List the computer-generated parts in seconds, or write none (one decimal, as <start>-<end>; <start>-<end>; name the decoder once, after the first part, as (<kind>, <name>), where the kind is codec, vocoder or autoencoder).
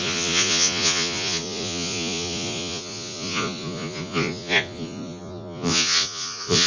0.0-6.7 (vocoder, Vocos)